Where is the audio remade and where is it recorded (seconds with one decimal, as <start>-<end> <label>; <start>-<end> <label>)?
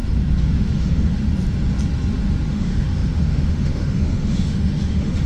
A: 0.0-0.7 recorded; 0.7-1.2 remade; 1.2-2.5 recorded; 2.5-5.3 remade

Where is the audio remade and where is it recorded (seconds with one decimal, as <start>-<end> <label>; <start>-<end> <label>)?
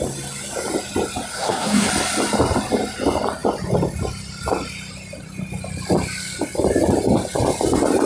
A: 0.0-1.3 recorded; 1.3-1.9 remade; 1.9-8.1 recorded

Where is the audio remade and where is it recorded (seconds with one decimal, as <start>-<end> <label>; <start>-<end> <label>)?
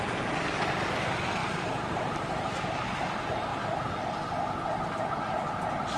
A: 0.0-1.4 recorded; 1.4-3.0 remade; 3.0-6.0 recorded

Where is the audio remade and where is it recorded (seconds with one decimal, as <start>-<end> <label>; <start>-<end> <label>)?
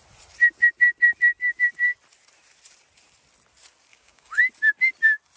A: 0.0-3.9 recorded; 3.9-4.4 remade; 4.4-5.4 recorded